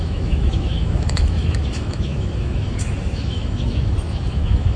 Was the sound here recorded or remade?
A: remade